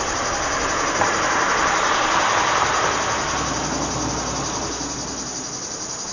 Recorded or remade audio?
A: recorded